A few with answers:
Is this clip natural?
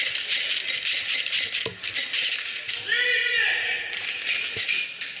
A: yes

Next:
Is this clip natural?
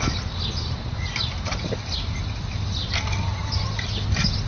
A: yes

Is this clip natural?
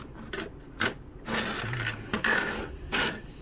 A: yes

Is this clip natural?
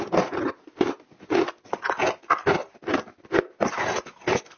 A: yes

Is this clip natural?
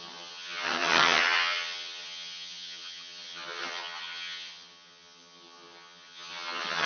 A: no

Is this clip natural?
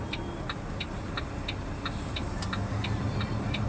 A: yes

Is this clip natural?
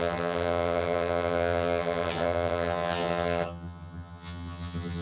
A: no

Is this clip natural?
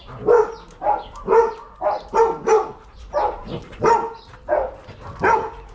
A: yes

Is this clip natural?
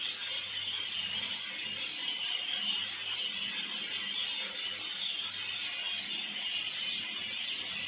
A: yes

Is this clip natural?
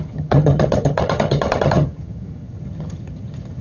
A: no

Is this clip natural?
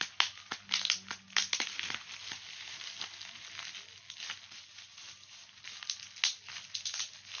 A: yes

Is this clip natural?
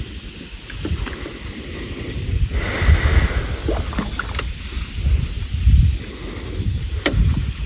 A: yes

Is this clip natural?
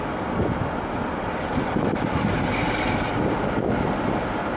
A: yes